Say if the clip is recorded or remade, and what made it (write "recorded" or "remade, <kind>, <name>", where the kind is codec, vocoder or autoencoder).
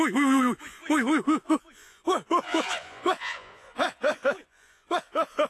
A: remade, vocoder, Vocos